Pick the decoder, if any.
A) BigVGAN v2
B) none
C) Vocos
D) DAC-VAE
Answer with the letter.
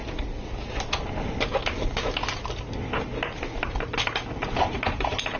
A